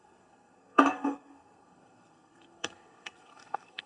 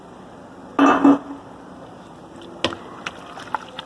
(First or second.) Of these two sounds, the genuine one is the second